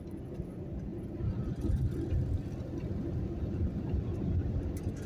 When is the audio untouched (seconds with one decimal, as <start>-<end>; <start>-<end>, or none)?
0.0-0.9; 4.0-5.1